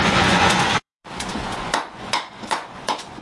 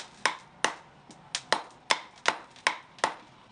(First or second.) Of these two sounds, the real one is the second